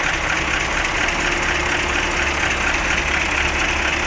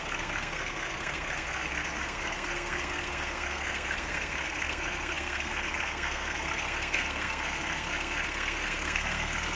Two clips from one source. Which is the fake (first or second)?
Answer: second